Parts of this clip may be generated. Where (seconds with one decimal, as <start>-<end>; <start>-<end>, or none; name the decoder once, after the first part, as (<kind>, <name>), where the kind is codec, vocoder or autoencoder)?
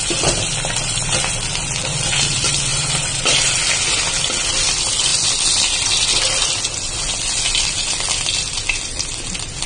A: 2.7-3.6 (vocoder, BigVGAN v2)